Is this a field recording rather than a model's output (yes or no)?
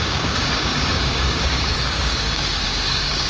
no